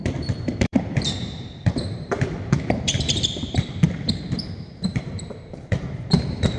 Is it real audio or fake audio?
fake